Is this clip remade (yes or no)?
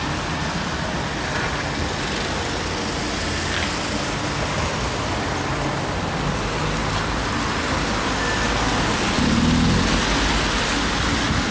no